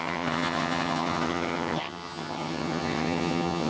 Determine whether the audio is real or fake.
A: fake